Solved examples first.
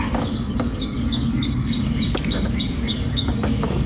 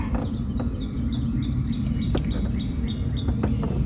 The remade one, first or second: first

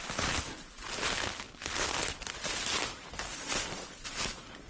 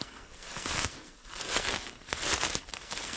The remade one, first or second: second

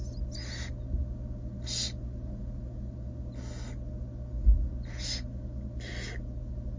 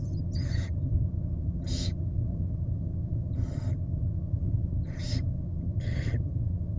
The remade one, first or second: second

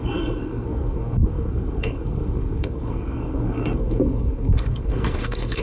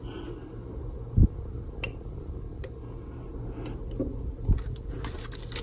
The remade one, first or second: first